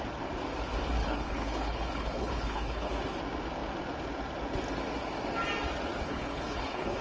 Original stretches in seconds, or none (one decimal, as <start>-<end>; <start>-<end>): 0.0-1.0; 2.9-6.0